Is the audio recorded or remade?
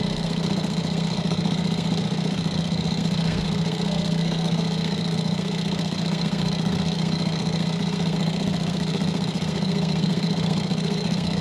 remade